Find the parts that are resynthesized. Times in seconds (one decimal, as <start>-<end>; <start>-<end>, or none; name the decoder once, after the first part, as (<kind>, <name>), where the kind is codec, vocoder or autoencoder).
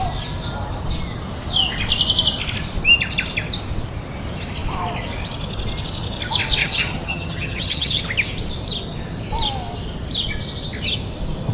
6.6-8.0 (vocoder, HiFi-GAN)